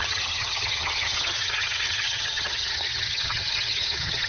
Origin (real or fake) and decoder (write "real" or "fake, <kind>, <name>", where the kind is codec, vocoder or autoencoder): fake, vocoder, HiFi-GAN